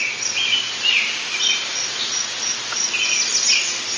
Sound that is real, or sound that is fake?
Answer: real